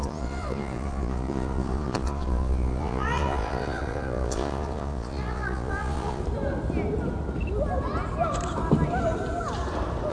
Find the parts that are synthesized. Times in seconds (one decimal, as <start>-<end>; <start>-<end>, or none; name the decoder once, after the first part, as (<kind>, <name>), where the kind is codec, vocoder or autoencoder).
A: 0.0-6.2 (vocoder, Vocos)